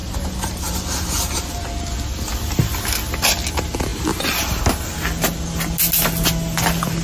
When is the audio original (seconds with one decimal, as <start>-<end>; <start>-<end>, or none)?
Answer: 0.8-7.0